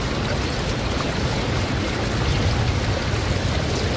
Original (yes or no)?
yes